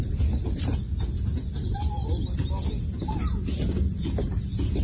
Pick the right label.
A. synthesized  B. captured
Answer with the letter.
B